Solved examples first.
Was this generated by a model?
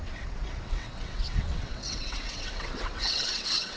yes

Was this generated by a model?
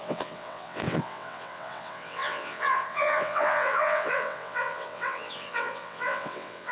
yes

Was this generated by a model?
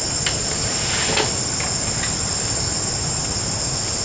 no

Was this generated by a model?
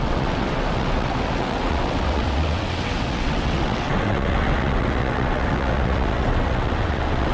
yes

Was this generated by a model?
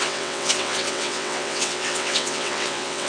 yes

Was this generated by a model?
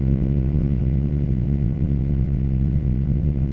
yes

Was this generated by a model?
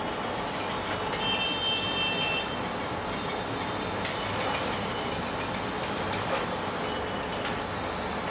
no